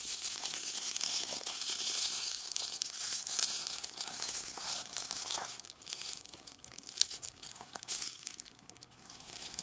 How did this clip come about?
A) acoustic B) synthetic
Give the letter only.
B